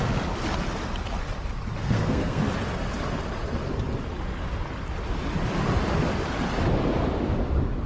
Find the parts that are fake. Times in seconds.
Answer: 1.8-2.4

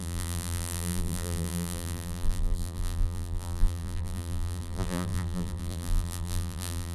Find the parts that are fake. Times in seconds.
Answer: 0.0-6.9

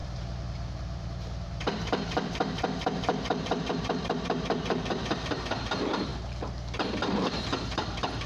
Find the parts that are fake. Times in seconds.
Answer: 0.0-6.1; 7.1-8.3

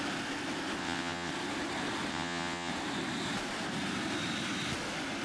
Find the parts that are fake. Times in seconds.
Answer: 0.8-1.3; 2.1-2.7

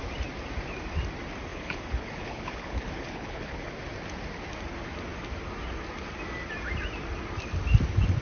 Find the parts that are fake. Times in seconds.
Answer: 1.5-3.8

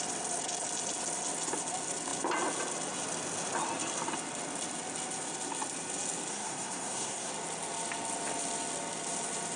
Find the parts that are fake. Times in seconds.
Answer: 6.3-7.3